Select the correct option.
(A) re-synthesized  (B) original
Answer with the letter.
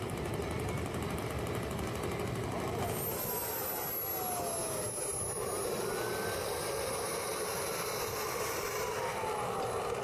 B